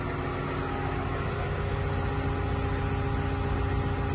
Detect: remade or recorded recorded